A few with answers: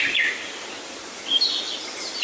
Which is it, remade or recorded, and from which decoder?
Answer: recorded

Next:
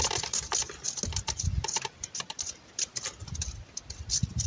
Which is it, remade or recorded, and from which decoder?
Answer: recorded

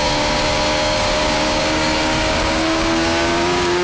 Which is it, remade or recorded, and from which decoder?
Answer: remade, codec, DAC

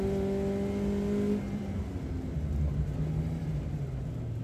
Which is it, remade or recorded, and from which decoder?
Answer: recorded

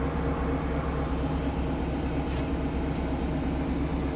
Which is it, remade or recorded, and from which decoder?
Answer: recorded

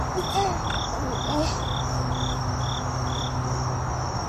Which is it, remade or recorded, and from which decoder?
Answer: recorded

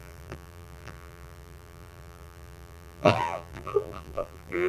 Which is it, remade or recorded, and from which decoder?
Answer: remade, vocoder, BigVGAN v2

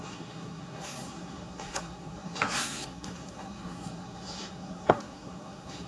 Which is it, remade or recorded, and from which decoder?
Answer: remade, codec, SNAC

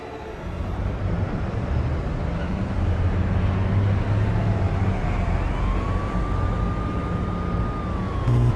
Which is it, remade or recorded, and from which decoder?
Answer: recorded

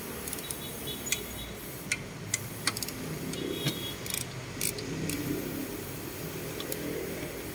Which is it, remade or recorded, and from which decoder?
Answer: recorded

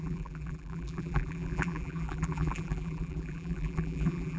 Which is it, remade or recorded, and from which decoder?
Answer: remade, vocoder, BigVGAN v2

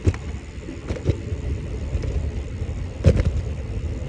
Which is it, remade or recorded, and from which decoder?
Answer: recorded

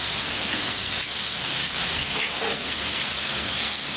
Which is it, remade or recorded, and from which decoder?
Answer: remade, codec, SNAC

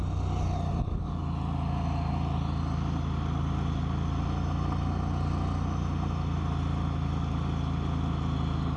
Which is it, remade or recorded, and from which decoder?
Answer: recorded